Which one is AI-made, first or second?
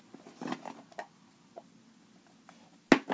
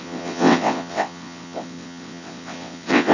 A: second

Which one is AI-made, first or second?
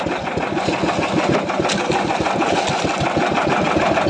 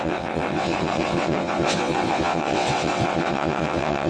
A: second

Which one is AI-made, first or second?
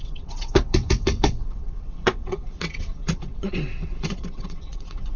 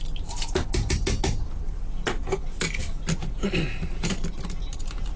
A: first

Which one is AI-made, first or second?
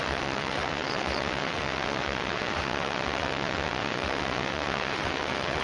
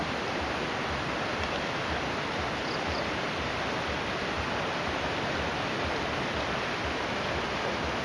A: first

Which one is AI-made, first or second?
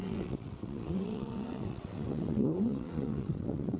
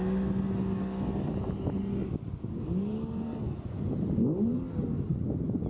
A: first